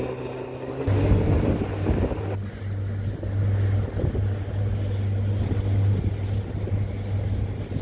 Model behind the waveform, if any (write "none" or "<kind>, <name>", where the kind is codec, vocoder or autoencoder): none